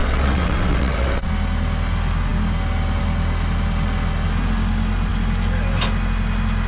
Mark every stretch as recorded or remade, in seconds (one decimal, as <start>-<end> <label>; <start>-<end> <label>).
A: 0.0-1.3 remade; 1.3-6.7 recorded